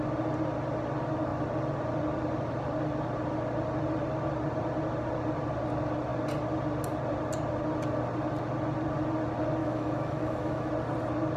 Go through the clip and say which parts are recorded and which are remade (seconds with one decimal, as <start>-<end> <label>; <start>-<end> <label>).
0.0-9.6 recorded; 9.6-10.7 remade; 10.7-11.4 recorded

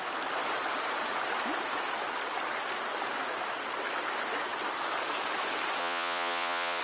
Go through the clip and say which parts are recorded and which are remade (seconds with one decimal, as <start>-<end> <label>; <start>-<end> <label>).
0.0-5.8 recorded; 5.8-6.8 remade

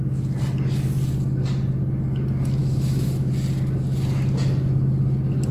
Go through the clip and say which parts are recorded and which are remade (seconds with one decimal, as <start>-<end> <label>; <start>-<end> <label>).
0.0-2.6 recorded; 2.6-3.3 remade; 3.3-5.5 recorded

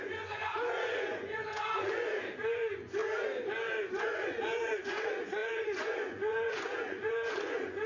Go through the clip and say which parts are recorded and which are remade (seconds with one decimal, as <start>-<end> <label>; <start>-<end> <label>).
0.0-3.0 remade; 3.0-3.9 recorded; 3.9-7.9 remade

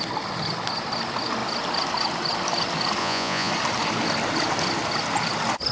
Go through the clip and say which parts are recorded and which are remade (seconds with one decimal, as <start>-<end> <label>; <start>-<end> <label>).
0.0-3.0 recorded; 3.0-3.5 remade; 3.5-5.7 recorded

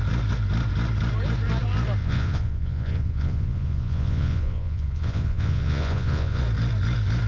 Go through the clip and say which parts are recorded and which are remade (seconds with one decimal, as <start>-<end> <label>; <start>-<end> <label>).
0.0-2.0 recorded; 2.0-6.4 remade; 6.4-7.3 recorded

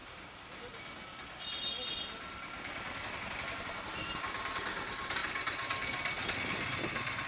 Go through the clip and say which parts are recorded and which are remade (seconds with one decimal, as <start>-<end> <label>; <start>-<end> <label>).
0.0-4.2 recorded; 4.2-5.2 remade; 5.2-6.5 recorded; 6.5-7.3 remade

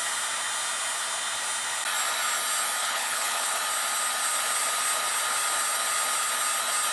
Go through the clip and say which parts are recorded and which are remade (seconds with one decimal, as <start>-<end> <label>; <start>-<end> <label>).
0.0-2.8 recorded; 2.8-3.6 remade; 3.6-6.9 recorded